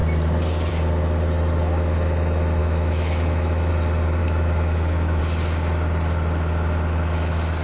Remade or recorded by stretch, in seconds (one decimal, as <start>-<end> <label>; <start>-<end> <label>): 0.0-2.6 recorded; 2.6-3.7 remade; 3.7-4.2 recorded; 4.2-5.2 remade; 5.2-7.6 recorded